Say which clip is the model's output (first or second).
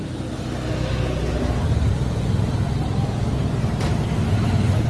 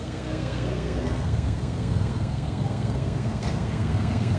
second